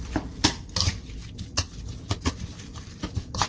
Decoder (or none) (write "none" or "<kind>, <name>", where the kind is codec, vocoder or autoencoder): none